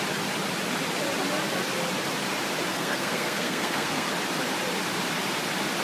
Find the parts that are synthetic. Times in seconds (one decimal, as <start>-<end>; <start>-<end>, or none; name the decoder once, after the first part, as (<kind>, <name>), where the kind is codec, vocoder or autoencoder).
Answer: 2.7-4.1 (codec, SNAC)